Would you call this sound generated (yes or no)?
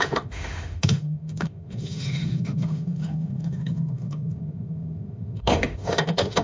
yes